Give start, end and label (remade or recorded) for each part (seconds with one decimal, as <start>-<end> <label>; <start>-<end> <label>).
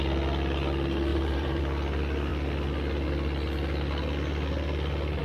0.0-1.1 recorded; 1.1-1.6 remade; 1.6-5.2 recorded